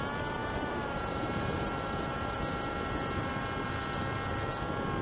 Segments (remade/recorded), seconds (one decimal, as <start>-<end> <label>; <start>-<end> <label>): 0.0-0.4 recorded; 0.4-3.4 remade; 3.4-5.0 recorded